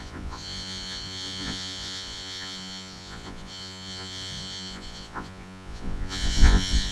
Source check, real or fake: fake